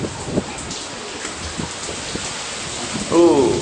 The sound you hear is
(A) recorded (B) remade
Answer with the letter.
A